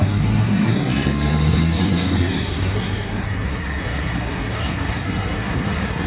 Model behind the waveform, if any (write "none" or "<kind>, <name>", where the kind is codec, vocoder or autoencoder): codec, SNAC